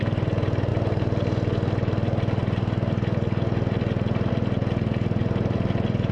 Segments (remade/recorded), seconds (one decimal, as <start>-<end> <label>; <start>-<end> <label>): 0.0-6.1 recorded